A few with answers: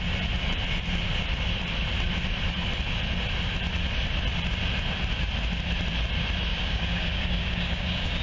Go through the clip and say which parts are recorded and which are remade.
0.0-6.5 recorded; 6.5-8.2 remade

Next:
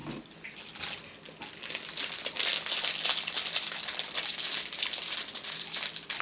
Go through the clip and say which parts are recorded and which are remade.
0.0-6.2 recorded

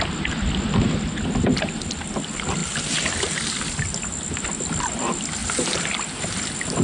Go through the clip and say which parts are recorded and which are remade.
0.0-6.8 recorded

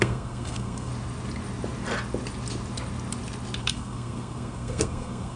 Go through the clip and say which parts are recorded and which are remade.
0.0-0.9 remade; 0.9-3.6 recorded; 3.6-5.4 remade

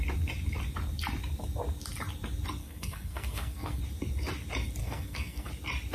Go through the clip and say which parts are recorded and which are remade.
0.0-2.6 recorded; 2.6-3.8 remade; 3.8-4.8 recorded; 4.8-5.5 remade; 5.5-5.9 recorded

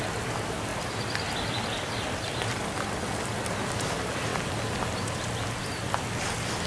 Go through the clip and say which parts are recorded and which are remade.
0.0-6.7 recorded